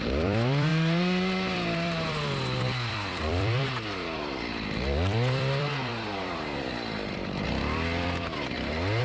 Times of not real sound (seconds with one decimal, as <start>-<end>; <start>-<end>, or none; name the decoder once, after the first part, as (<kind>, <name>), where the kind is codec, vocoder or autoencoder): 0.0-9.0 (vocoder, BigVGAN v2)